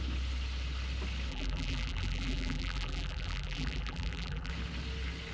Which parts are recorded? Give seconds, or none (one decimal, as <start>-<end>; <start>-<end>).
0.0-1.3; 4.5-5.3